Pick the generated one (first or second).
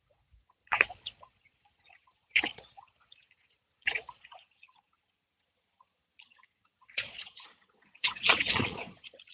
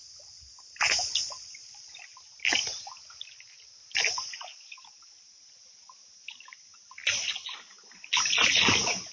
first